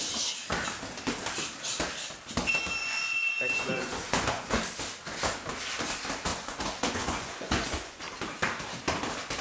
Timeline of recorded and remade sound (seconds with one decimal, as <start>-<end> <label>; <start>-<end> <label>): 0.0-2.8 recorded; 2.8-4.6 remade; 4.6-6.3 recorded; 6.3-8.0 remade; 8.0-9.4 recorded